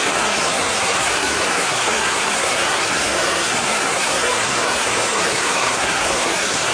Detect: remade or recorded remade